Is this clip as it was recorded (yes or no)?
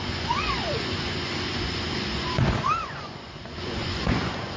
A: no